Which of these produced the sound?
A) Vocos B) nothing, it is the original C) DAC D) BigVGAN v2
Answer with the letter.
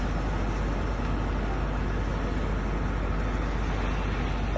B